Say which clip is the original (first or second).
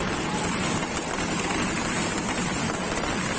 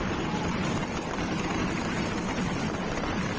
first